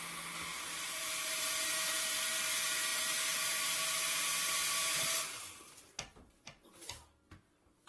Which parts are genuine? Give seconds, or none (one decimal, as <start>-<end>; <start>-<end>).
0.0-0.5; 2.5-2.9; 3.7-7.9